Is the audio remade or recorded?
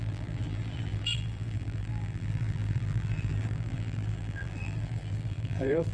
remade